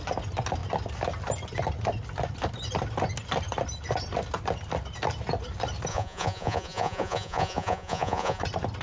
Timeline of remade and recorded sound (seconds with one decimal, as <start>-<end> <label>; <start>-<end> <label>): 0.0-5.9 recorded; 5.9-8.4 remade; 8.4-8.8 recorded